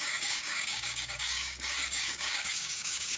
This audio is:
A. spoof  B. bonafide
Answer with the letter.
A